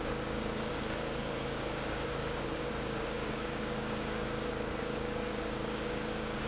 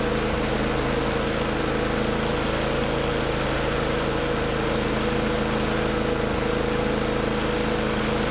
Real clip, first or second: second